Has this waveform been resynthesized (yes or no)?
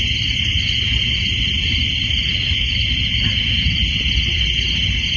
no